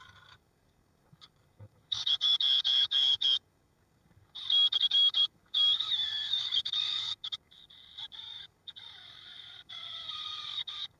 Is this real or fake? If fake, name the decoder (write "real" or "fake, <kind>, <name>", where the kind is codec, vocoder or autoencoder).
fake, codec, DAC